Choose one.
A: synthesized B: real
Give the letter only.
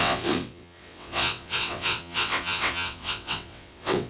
A